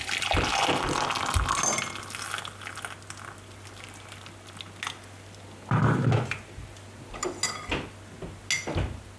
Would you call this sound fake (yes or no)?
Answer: no